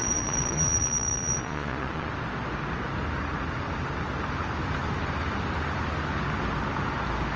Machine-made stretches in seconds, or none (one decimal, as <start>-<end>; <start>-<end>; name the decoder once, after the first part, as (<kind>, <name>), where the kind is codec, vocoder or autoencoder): 0.0-2.1 (vocoder, Vocos)